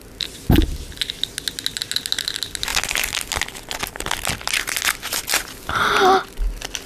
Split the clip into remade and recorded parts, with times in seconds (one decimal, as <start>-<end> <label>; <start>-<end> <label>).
0.0-6.9 recorded